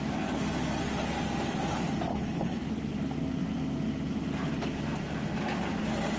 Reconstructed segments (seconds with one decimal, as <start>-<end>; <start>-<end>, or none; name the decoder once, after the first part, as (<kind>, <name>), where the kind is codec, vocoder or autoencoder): 2.1-2.7 (codec, HILCodec)